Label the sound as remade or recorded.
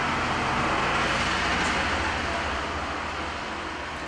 recorded